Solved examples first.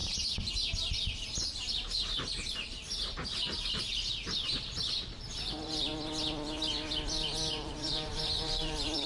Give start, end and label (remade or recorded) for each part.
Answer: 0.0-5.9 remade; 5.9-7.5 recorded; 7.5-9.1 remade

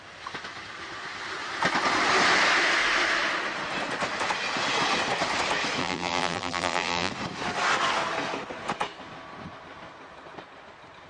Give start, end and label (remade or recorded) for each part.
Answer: 0.0-5.8 recorded; 5.8-7.1 remade; 7.1-11.1 recorded

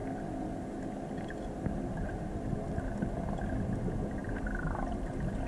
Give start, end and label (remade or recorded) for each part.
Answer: 0.0-4.2 recorded; 4.2-5.5 remade

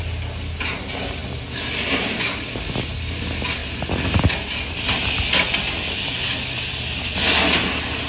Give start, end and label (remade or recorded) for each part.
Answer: 0.0-8.1 recorded

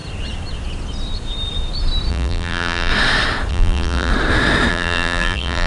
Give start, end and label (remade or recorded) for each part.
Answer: 0.0-2.1 recorded; 2.1-2.9 remade; 2.9-3.5 recorded; 3.5-4.1 remade; 4.1-4.7 recorded; 4.7-5.7 remade